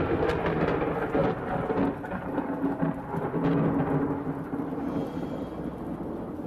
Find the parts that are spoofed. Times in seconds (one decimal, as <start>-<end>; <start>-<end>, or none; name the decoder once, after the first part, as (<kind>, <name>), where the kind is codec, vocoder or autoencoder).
none